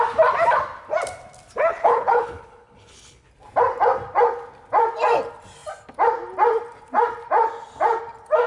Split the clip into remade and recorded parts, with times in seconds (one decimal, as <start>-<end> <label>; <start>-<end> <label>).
0.0-1.7 recorded; 1.7-3.3 remade; 3.3-8.5 recorded